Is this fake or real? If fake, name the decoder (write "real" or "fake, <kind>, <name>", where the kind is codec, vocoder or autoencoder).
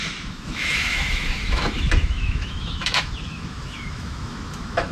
fake, autoencoder, DAC-VAE